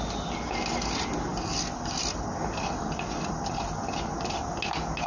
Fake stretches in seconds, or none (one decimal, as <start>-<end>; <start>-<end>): none